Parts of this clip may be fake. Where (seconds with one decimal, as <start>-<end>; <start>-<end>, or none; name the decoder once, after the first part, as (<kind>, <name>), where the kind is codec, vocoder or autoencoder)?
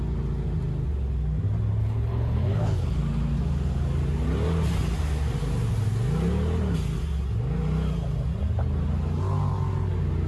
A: 1.8-3.0 (codec, HILCodec)